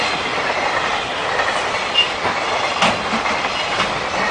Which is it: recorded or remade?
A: recorded